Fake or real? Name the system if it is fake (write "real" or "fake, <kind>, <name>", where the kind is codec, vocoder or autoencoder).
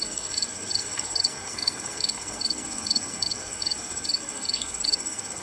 fake, codec, SNAC